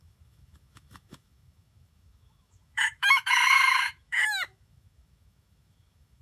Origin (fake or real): fake